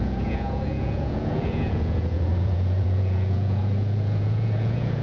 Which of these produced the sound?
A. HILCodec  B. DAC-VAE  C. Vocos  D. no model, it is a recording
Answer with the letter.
C